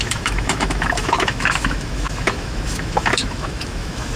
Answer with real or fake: fake